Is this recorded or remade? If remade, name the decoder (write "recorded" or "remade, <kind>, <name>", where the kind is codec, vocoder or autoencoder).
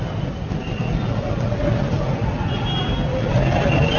recorded